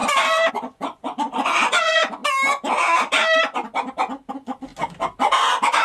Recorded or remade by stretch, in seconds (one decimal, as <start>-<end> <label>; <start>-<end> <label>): 0.0-0.5 recorded; 0.5-2.2 remade; 2.2-4.3 recorded; 4.3-4.7 remade; 4.7-5.8 recorded